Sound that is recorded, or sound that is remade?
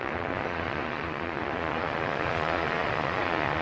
remade